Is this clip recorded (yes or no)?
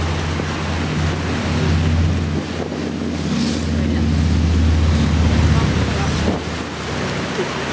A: yes